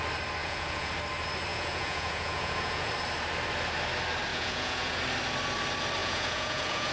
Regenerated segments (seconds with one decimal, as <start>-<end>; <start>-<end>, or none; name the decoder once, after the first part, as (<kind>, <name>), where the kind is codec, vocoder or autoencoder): 0.4-0.9 (vocoder, Vocos); 1.5-2.9; 4.3-5.0; 6.0-6.9